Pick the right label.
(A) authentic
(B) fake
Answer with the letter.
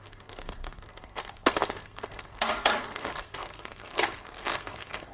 B